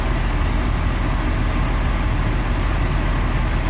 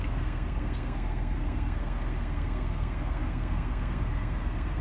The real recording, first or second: first